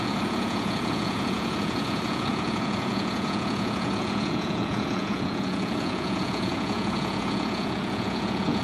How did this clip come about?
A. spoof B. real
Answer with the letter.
A